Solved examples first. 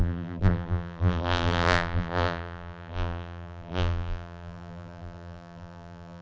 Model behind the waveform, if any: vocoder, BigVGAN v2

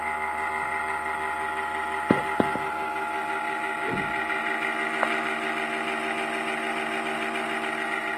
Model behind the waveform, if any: none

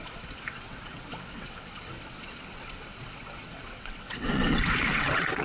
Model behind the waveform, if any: vocoder, WaveNeXt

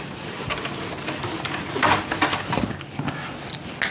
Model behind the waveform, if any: none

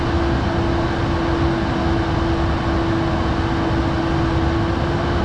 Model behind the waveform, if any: none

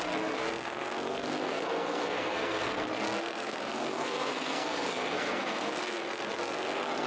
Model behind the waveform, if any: codec, SNAC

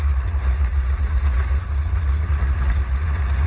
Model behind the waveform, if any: vocoder, Vocos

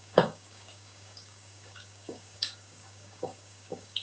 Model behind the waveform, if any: codec, DAC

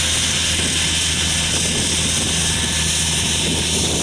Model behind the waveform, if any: none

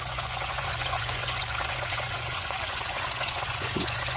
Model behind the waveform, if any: vocoder, Vocos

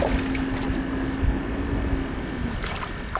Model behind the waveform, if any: none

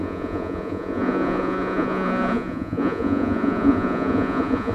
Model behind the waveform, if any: vocoder, Vocos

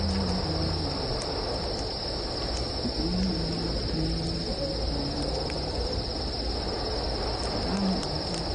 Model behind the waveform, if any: none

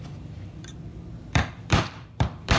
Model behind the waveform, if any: vocoder, BigVGAN v2